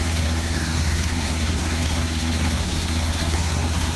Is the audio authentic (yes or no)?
no